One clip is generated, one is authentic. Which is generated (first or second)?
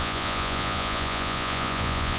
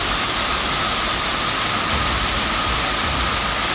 first